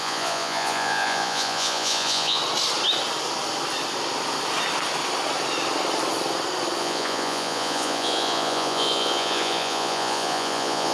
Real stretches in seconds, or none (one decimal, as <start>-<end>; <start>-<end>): 2.4-6.8